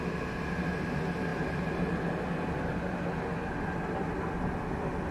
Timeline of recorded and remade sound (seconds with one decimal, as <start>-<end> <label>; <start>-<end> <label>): 0.0-5.1 recorded